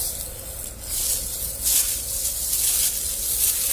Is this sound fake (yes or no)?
no